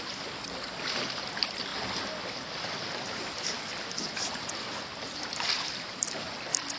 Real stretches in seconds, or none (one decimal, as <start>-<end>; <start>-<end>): 0.0-1.7; 4.5-5.1; 5.7-6.8